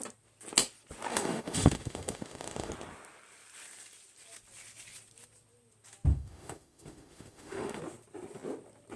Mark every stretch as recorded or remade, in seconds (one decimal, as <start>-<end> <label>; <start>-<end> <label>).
0.0-1.1 recorded; 1.1-2.7 remade; 2.7-6.1 recorded; 6.1-7.8 remade; 7.8-9.0 recorded

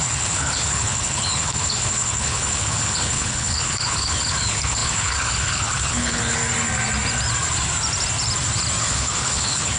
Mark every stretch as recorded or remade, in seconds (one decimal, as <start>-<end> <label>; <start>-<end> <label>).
0.0-6.4 remade; 6.4-8.8 recorded; 8.8-9.8 remade

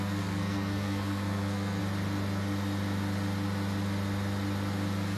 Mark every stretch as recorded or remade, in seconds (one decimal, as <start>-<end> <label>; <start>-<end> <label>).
0.0-1.8 remade; 1.8-5.2 recorded

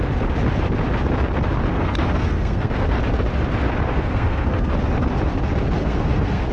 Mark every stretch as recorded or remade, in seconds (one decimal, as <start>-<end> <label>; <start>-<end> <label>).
0.0-1.7 recorded; 1.7-3.0 remade; 3.0-3.9 recorded; 3.9-4.7 remade; 4.7-5.8 recorded; 5.8-6.5 remade

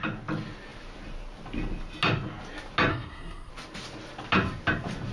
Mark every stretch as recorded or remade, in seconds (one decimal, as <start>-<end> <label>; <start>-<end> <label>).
0.0-2.9 recorded; 2.9-3.5 remade; 3.5-5.1 recorded

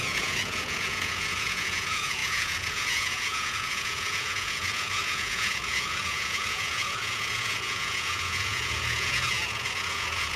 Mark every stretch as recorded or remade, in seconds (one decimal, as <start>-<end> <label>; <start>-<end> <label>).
0.0-10.4 remade

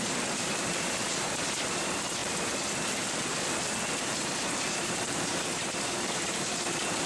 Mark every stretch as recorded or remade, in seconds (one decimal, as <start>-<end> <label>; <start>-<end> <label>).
0.0-2.2 remade; 2.2-4.0 recorded; 4.0-7.1 remade

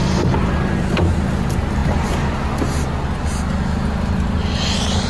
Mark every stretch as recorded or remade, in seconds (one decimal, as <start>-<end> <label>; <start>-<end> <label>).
0.0-5.1 recorded